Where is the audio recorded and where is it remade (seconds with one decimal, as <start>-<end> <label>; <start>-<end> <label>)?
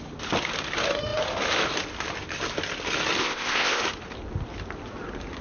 0.0-3.2 recorded; 3.2-3.8 remade; 3.8-5.4 recorded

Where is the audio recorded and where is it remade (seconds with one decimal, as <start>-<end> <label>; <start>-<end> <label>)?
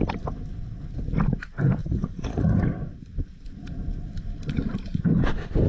0.0-1.8 recorded; 1.8-2.6 remade; 2.6-5.7 recorded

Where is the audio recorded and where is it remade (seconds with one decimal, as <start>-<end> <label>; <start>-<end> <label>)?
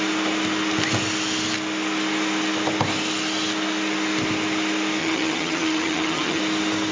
0.0-5.0 recorded; 5.0-6.4 remade; 6.4-6.9 recorded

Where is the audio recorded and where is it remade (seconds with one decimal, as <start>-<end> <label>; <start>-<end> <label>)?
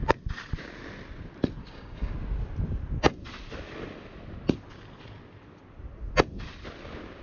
0.0-1.6 recorded; 1.6-2.1 remade; 2.1-7.2 recorded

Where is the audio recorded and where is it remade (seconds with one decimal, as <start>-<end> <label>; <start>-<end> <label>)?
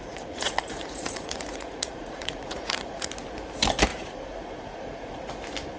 0.0-3.1 remade; 3.1-3.9 recorded; 3.9-5.3 remade; 5.3-5.8 recorded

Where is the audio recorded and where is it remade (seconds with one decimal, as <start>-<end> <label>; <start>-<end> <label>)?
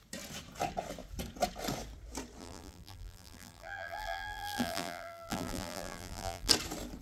0.0-2.4 recorded; 2.4-6.5 remade; 6.5-7.0 recorded